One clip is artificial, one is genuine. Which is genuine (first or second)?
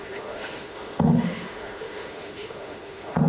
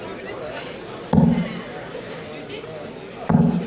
second